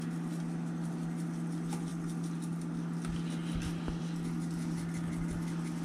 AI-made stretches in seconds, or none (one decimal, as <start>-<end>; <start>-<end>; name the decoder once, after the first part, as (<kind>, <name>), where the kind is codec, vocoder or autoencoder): none